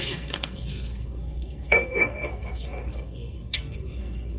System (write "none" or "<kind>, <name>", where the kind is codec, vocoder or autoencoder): codec, SNAC